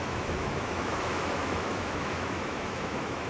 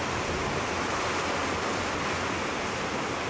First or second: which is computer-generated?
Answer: first